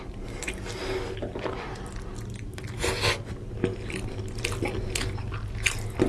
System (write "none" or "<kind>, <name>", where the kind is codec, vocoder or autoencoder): none